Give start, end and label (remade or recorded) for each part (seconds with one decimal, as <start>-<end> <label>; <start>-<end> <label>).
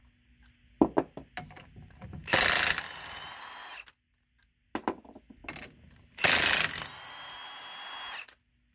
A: 0.0-8.7 recorded